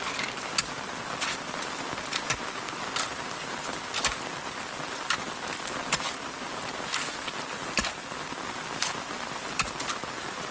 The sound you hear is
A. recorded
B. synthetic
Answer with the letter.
A